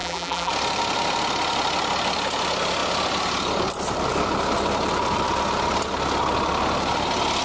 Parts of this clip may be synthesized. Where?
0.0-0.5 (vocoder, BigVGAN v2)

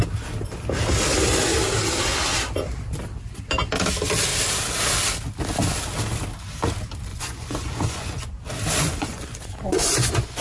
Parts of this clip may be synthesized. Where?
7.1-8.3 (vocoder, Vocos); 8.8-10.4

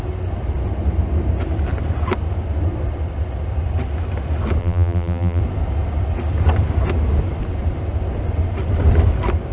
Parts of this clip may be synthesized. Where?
4.6-5.4 (vocoder, BigVGAN v2)

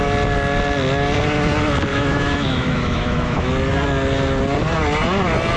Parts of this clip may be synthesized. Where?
1.9-3.5 (autoencoder, DAC-VAE)

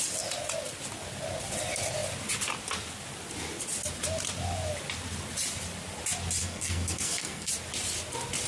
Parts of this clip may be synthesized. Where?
6.4-7.5 (codec, SNAC)

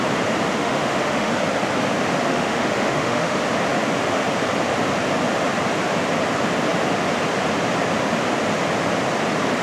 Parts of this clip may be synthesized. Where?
0.6-1.3 (autoencoder, DAC-VAE); 2.3-3.4

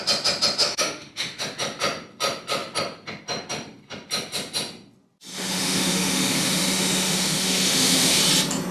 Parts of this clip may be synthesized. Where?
0.6-1.4 (autoencoder, DAC-VAE); 5.3-8.2